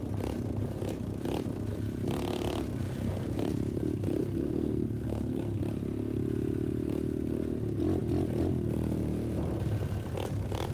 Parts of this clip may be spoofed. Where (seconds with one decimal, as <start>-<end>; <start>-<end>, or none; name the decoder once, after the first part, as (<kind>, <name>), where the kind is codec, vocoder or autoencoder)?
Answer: 4.2-5.6 (codec, SNAC)

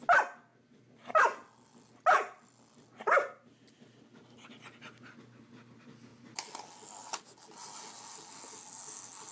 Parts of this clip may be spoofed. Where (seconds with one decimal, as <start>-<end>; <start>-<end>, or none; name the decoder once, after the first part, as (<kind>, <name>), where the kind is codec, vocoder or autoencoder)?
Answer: none

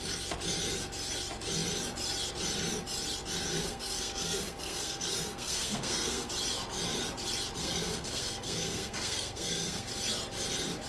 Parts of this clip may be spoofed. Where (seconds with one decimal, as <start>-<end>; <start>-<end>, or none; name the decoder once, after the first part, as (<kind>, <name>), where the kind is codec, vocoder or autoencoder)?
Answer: 3.5-6.3 (codec, SNAC); 7.6-9.9

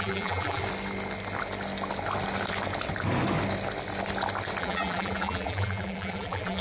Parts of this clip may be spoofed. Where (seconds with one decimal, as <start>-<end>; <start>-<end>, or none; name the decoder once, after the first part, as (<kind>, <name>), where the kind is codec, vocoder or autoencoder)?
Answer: 0.0-0.6 (vocoder, BigVGAN v2); 4.6-6.6

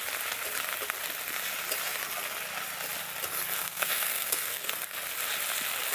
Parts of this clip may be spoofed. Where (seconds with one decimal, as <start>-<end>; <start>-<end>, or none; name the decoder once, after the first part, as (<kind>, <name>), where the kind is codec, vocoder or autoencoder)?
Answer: 3.6-4.7 (codec, SNAC)

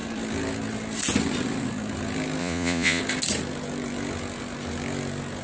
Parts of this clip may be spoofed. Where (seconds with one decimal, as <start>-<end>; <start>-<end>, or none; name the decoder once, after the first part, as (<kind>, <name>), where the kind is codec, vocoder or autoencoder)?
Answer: 2.4-3.0 (vocoder, Vocos)